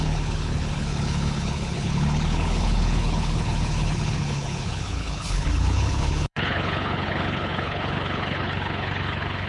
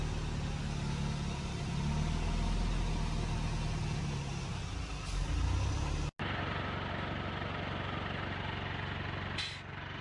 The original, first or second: second